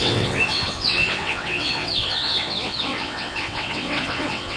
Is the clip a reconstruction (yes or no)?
yes